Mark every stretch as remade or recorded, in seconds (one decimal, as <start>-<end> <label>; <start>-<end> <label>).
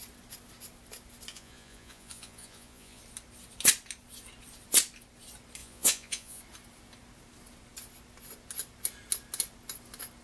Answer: 0.0-1.3 recorded; 1.3-3.0 remade; 3.0-5.6 recorded; 5.6-6.4 remade; 6.4-10.2 recorded